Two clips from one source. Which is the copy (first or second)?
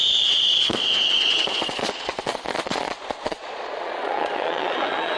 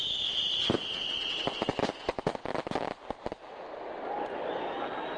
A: first